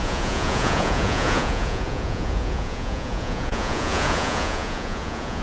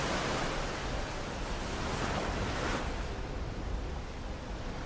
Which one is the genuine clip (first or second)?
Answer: second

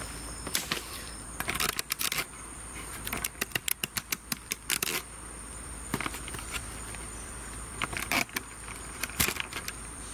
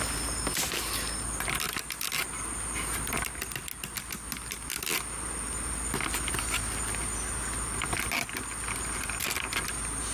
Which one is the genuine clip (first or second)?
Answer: second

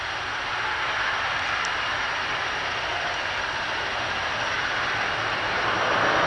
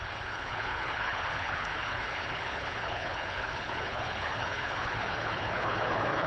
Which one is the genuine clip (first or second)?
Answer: first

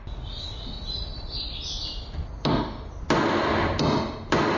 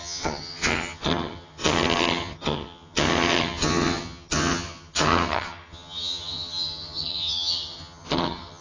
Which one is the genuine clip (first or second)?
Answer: first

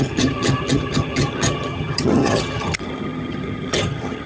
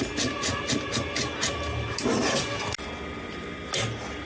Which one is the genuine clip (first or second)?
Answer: second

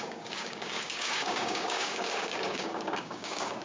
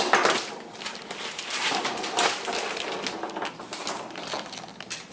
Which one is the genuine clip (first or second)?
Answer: second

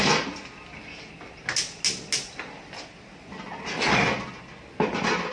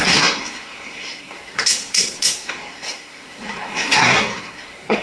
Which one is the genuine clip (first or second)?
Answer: first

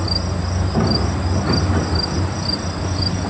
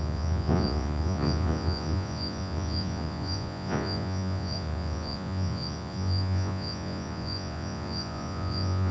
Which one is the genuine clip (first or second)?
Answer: first